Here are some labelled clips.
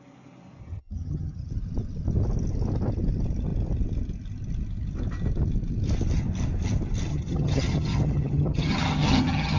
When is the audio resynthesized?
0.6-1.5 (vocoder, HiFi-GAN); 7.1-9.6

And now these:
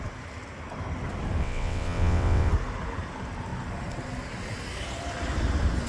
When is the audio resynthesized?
1.4-2.5 (vocoder, WaveNeXt)

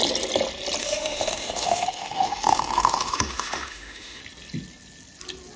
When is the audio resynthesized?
0.8-4.2 (autoencoder, DAC-VAE)

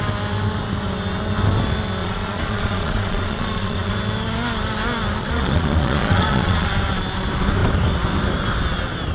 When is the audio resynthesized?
2.0-3.9 (vocoder, Vocos); 5.2-6.7

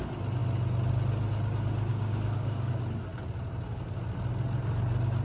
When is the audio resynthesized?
1.9-2.7 (codec, DAC)

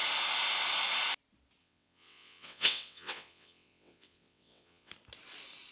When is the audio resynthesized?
1.6-4.9 (vocoder, WaveNeXt)

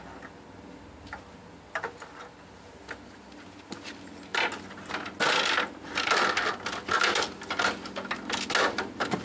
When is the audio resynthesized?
none